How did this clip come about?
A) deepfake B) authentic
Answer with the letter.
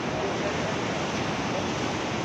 B